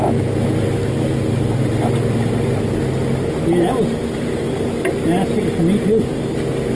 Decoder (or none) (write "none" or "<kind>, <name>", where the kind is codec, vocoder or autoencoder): none